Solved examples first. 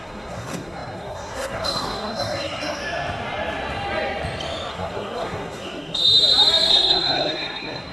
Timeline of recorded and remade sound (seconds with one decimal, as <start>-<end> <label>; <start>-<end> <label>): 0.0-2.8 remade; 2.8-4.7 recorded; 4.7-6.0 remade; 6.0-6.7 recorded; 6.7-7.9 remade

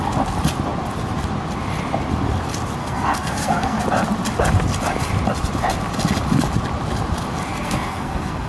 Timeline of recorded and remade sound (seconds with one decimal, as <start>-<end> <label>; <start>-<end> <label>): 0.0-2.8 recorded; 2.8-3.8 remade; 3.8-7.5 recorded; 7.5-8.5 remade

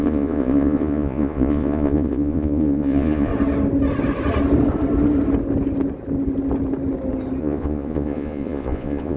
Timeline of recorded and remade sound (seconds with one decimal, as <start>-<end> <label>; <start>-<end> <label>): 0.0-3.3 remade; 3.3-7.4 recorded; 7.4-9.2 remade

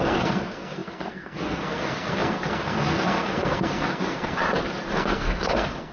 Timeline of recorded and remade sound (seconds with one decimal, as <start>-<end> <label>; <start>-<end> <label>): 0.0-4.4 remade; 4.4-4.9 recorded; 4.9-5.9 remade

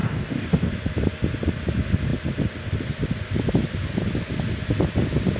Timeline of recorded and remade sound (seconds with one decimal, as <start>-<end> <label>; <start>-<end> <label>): 0.0-0.7 remade; 0.7-5.4 recorded

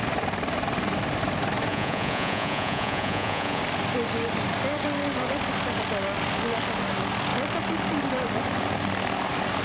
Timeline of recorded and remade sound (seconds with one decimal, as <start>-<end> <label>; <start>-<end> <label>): 0.0-1.7 recorded; 1.7-3.6 remade; 3.6-9.6 recorded

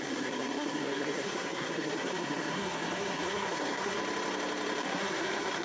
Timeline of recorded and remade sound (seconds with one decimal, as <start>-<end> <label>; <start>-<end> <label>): 0.0-4.0 remade; 4.0-4.8 recorded; 4.8-5.6 remade